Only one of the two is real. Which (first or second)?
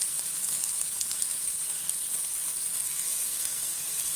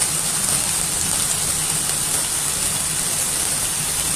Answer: second